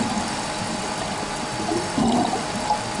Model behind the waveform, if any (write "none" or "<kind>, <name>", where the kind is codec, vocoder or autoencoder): none